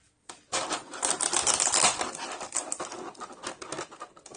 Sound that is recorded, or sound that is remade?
recorded